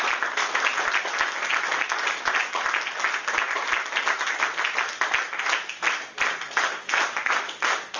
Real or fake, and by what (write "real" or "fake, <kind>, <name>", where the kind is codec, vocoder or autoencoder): real